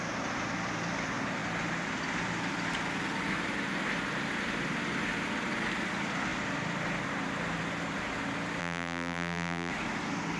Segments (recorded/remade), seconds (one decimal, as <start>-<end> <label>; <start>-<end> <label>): 0.0-8.6 recorded; 8.6-9.7 remade; 9.7-10.4 recorded